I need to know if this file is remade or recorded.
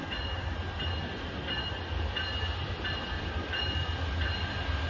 recorded